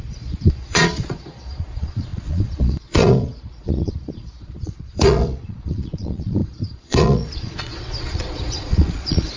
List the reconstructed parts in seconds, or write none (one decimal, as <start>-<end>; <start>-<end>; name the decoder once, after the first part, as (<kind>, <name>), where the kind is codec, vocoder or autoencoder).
0.0-9.4 (vocoder, Vocos)